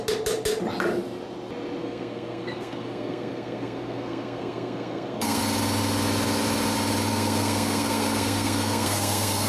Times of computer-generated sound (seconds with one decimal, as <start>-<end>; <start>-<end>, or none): 1.8-5.4; 7.1-9.5